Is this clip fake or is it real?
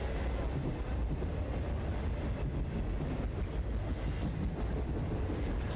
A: real